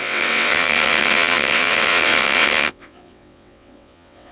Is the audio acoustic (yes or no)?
no